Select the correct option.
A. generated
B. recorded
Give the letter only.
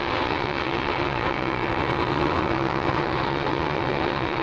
A